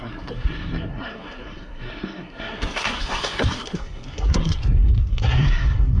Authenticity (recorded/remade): remade